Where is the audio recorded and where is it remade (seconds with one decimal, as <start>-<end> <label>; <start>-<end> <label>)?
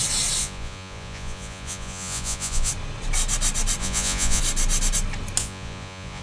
0.0-0.4 recorded; 0.4-2.7 remade; 2.7-3.8 recorded; 3.8-4.4 remade; 4.4-5.4 recorded; 5.4-6.2 remade